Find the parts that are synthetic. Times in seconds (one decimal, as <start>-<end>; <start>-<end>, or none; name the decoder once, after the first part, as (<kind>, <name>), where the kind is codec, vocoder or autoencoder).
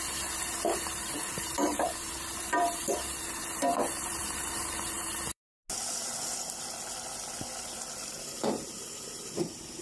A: 0.0-5.4 (vocoder, BigVGAN v2); 8.1-9.8